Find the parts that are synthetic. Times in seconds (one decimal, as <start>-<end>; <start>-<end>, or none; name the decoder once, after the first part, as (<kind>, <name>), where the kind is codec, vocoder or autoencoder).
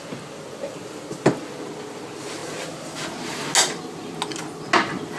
none